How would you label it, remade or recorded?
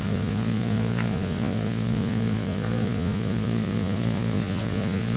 remade